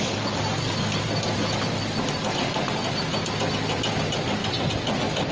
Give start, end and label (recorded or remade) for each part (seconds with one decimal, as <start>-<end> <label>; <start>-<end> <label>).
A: 0.0-5.3 recorded